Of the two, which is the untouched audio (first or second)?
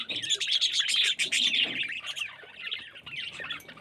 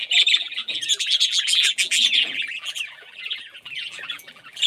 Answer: first